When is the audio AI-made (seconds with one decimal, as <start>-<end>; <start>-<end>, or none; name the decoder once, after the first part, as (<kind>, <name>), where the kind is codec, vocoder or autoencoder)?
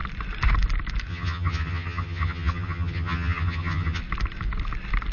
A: 1.1-4.0 (vocoder, HiFi-GAN)